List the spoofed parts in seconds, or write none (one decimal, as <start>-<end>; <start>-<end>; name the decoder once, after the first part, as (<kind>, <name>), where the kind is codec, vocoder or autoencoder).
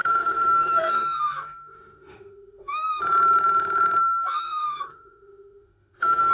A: 0.0-3.0 (autoencoder, DAC-VAE); 4.0-6.3